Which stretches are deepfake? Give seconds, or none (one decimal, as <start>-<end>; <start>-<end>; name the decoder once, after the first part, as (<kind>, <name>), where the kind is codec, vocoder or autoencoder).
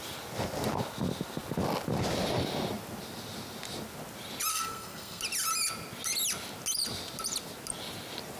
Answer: 4.5-5.2 (codec, SNAC)